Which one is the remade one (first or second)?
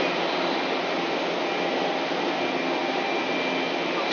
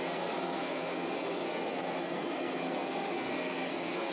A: second